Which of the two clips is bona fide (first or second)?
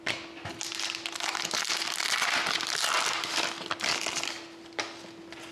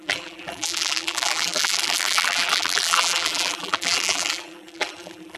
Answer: first